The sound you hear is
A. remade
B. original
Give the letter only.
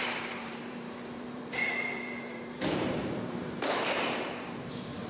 A